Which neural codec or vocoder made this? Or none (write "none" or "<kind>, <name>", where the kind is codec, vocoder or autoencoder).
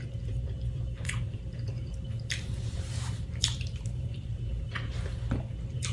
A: vocoder, BigVGAN v2